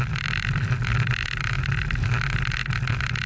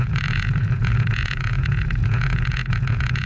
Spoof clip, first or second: second